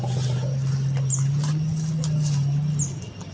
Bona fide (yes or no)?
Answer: yes